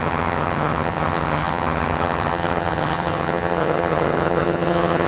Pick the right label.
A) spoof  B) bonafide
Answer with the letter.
A